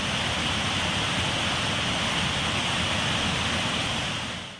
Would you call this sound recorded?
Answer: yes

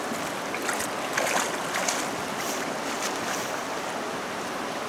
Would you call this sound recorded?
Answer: yes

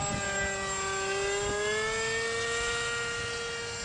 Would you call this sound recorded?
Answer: yes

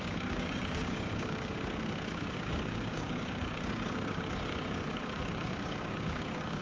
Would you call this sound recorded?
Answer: no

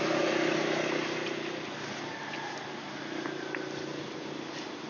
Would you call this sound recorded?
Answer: yes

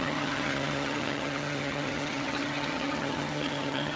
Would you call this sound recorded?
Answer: no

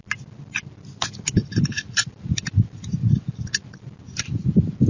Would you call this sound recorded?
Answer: yes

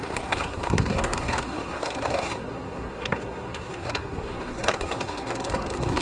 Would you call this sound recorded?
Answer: no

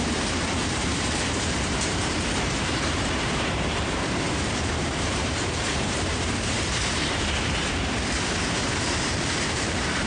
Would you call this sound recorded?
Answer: no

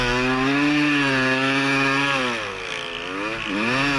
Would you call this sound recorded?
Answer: yes